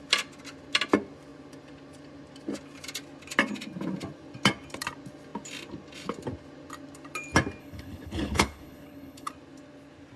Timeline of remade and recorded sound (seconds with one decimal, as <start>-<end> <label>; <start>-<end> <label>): 0.0-7.6 recorded; 7.6-9.3 remade; 9.3-10.2 recorded